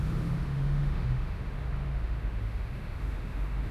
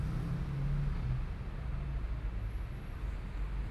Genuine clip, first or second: second